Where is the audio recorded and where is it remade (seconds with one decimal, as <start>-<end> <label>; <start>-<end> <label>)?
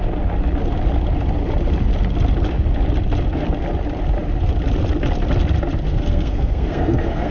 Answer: 0.0-5.9 recorded; 5.9-7.3 remade